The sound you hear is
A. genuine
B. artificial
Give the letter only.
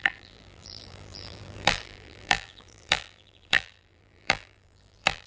B